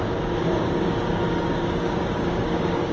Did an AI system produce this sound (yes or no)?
yes